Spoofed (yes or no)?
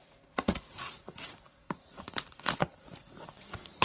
yes